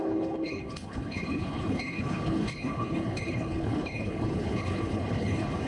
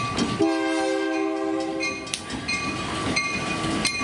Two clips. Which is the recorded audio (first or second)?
second